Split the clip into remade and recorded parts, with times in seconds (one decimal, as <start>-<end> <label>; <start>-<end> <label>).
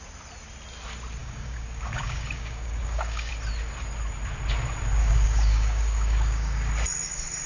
0.0-1.2 recorded; 1.2-3.3 remade; 3.3-5.0 recorded; 5.0-6.7 remade; 6.7-7.5 recorded